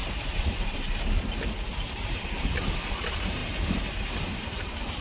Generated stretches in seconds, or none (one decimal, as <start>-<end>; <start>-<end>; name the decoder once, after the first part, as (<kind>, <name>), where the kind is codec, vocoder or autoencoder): 0.0-5.0 (vocoder, BigVGAN v2)